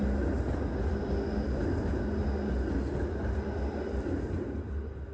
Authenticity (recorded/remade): recorded